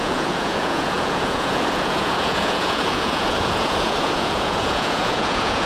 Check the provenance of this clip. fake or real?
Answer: fake